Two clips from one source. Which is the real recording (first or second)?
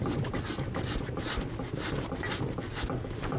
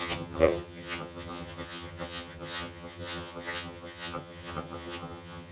first